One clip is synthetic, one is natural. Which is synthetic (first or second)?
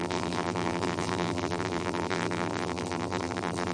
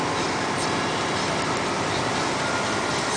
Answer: first